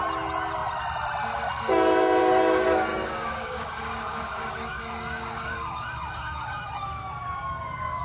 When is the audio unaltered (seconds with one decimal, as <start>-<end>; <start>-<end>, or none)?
0.0-2.9